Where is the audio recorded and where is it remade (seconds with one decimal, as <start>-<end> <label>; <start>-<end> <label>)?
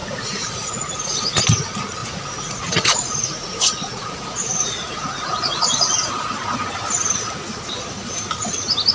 0.0-1.4 remade; 1.4-2.0 recorded; 2.0-6.1 remade; 6.1-8.9 recorded